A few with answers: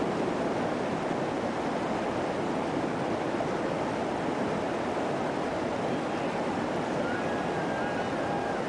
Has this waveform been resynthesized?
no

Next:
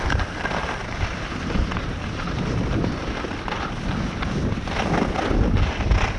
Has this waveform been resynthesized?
no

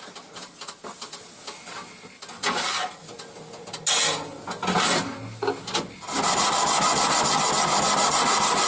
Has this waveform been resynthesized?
no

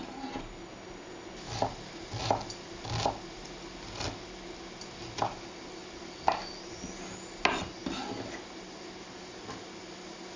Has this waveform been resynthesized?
no